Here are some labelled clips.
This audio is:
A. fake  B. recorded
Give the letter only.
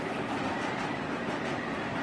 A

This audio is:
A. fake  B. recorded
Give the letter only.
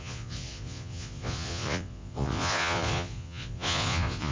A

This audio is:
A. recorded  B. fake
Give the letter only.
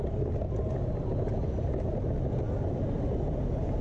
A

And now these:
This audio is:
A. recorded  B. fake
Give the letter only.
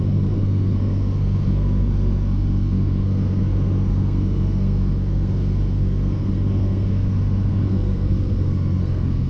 B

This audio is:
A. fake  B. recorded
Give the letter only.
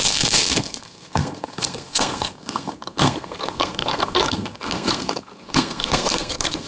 A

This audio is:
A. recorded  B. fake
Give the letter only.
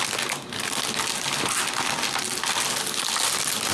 A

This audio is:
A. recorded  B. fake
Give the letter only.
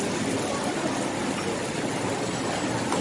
A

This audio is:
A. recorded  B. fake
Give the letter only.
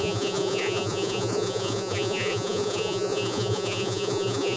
B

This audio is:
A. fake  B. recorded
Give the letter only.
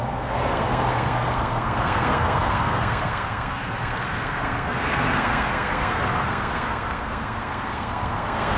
A